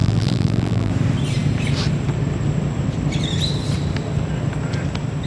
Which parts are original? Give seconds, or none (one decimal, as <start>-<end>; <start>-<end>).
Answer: 0.9-5.3